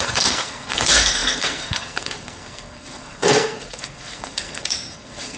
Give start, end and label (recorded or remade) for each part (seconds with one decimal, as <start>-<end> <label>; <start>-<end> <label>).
0.0-5.4 remade